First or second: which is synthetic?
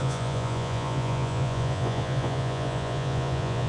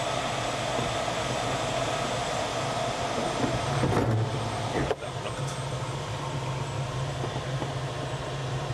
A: first